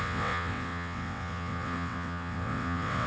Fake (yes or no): yes